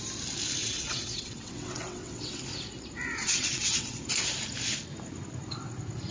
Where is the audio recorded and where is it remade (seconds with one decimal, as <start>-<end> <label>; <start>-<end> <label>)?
0.0-0.6 recorded; 0.6-2.4 remade; 2.4-3.2 recorded; 3.2-4.0 remade; 4.0-6.1 recorded